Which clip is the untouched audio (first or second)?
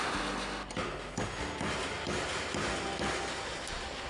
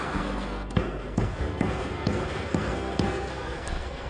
first